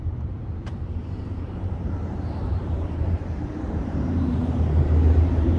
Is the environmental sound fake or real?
fake